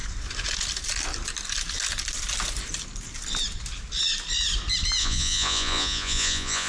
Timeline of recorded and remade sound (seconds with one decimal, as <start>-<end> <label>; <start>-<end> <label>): 0.0-5.0 recorded; 5.0-6.7 remade